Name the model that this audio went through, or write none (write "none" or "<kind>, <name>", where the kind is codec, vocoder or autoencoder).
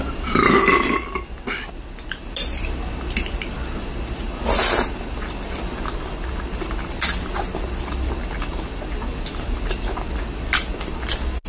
none